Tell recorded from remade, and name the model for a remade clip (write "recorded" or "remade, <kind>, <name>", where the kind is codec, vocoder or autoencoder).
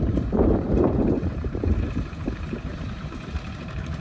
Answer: remade, vocoder, BigVGAN v2